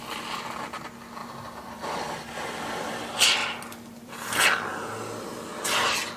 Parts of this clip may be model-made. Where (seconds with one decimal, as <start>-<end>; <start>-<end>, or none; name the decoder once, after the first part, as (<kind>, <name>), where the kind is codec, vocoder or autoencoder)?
none